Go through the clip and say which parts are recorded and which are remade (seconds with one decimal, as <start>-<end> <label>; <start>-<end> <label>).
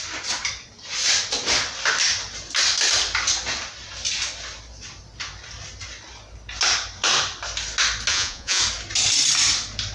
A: 0.0-8.1 recorded; 8.1-8.6 remade; 8.6-9.9 recorded